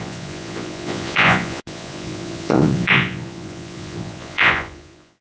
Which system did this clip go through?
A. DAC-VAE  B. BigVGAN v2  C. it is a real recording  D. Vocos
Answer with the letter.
D